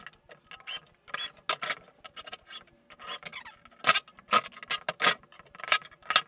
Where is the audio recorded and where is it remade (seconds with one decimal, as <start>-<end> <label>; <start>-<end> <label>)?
0.0-6.3 recorded